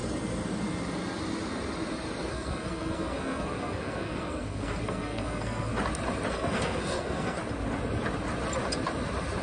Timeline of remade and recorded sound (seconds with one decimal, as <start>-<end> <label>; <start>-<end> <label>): 0.0-2.3 recorded; 2.3-5.7 remade; 5.7-6.3 recorded; 6.3-7.4 remade; 7.4-9.4 recorded